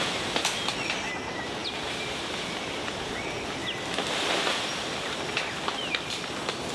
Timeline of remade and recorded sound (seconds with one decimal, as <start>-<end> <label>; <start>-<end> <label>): 0.0-1.6 recorded; 1.6-3.1 remade; 3.1-6.7 recorded